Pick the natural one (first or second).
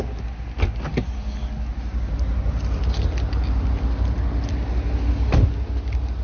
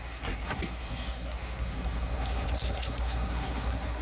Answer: first